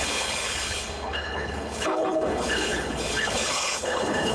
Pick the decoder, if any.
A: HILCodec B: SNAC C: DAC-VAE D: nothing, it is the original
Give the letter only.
A